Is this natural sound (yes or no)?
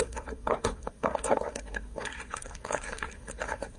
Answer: no